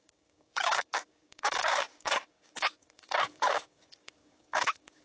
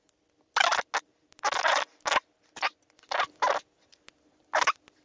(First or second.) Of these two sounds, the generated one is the first